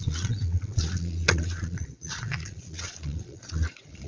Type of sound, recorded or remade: remade